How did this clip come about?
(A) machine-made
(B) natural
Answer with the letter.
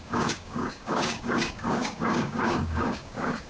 A